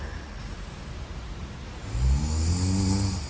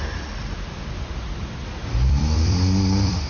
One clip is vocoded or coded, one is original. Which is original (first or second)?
first